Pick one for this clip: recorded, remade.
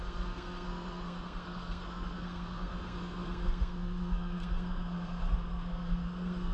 remade